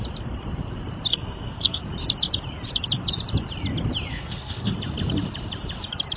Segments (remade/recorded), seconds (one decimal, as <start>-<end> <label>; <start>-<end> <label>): 0.0-1.1 recorded; 1.1-1.8 remade; 1.8-4.1 recorded; 4.1-4.7 remade; 4.7-6.2 recorded